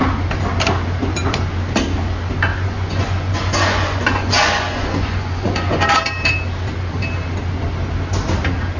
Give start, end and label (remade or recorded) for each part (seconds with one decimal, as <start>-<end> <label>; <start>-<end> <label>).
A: 0.0-2.5 recorded; 2.5-5.8 remade; 5.8-8.8 recorded